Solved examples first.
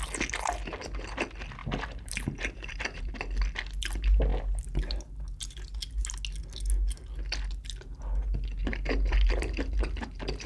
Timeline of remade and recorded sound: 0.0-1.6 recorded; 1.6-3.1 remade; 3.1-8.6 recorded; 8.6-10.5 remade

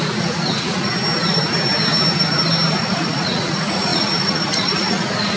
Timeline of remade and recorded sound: 0.0-0.9 remade; 0.9-2.8 recorded; 2.8-5.4 remade

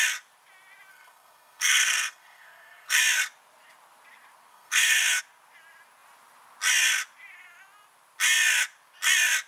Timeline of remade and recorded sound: 0.0-0.9 recorded; 0.9-3.0 remade; 3.0-4.5 recorded; 4.5-5.2 remade; 5.2-9.5 recorded